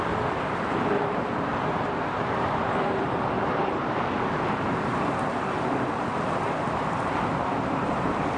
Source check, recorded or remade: remade